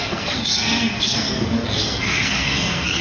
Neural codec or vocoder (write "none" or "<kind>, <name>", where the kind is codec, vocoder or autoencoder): codec, SNAC